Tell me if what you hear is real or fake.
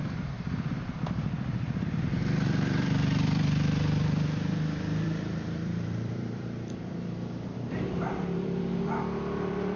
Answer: fake